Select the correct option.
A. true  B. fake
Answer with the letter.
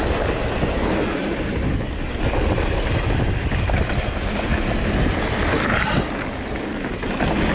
A